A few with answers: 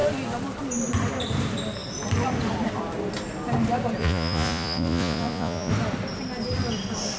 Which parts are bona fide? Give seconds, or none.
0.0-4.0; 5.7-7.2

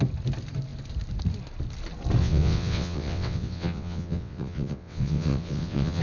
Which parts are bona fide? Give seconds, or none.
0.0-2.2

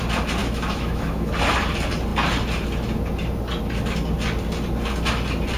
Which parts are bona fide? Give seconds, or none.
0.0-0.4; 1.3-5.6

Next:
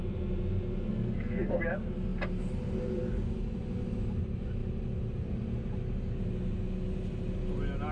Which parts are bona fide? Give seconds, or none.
0.0-0.9; 1.6-7.9

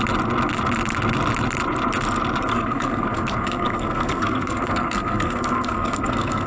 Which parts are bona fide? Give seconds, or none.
0.0-2.5

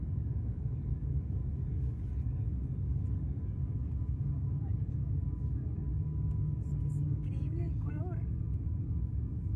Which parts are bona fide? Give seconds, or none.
8.0-8.8

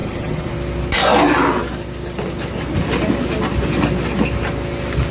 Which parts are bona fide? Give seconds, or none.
0.5-5.1

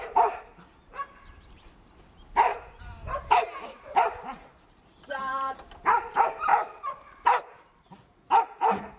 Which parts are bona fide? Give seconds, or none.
6.5-7.8